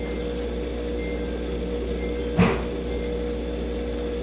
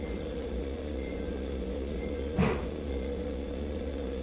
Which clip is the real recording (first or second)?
first